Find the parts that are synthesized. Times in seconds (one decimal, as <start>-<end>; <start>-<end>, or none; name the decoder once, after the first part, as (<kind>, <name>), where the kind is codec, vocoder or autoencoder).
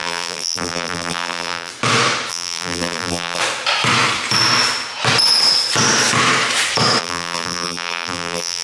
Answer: 0.0-1.7 (vocoder, BigVGAN v2); 2.3-3.4; 7.0-8.6